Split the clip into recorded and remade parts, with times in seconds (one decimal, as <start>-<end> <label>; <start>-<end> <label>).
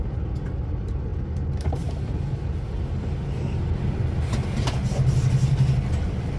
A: 0.0-6.4 recorded